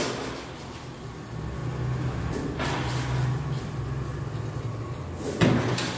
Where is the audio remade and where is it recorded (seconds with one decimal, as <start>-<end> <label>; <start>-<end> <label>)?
0.0-6.0 recorded

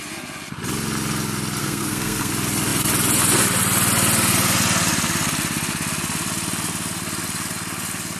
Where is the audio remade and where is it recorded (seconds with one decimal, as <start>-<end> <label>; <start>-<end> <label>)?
0.0-1.6 recorded; 1.6-2.3 remade; 2.3-8.2 recorded